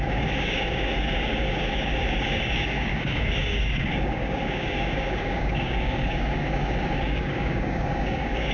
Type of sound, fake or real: fake